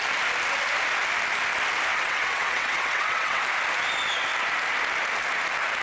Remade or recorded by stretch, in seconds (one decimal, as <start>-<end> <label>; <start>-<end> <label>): 0.0-1.9 recorded; 1.9-3.4 remade; 3.4-5.8 recorded